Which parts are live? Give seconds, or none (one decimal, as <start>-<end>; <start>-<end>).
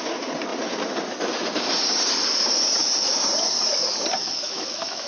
0.0-4.2